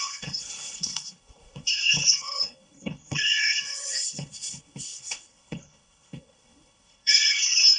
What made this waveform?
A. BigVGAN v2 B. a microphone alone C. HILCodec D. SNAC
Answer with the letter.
C